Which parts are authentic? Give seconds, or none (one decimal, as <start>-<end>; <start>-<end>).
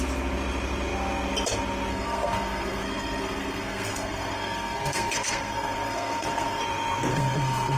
0.0-1.9; 6.6-7.1